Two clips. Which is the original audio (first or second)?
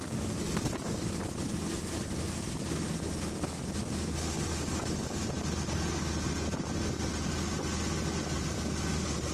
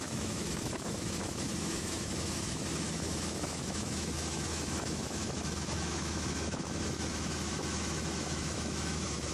first